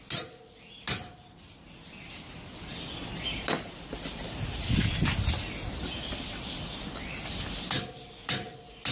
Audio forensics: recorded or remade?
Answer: recorded